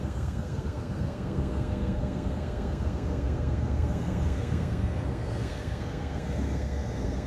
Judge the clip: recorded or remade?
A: remade